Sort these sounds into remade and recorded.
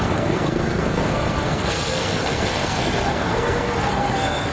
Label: remade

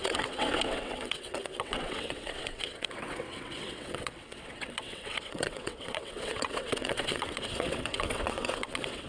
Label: remade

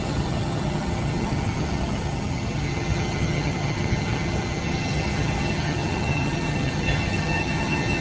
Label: remade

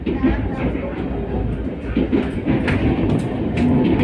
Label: recorded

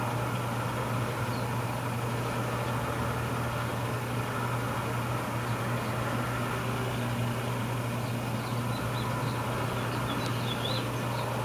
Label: recorded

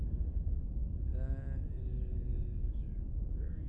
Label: remade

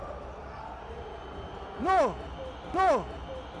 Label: recorded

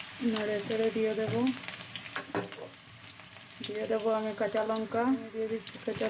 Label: recorded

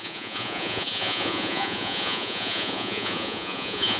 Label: remade